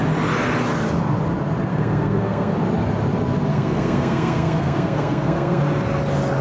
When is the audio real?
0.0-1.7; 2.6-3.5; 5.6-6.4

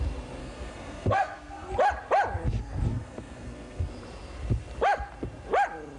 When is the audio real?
0.0-0.4; 1.7-2.9; 3.9-6.0

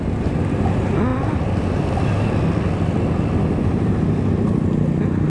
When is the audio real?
0.0-5.3

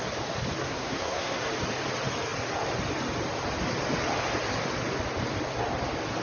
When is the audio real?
0.0-0.6; 1.4-6.2

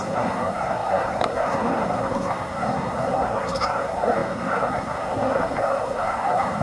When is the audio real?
none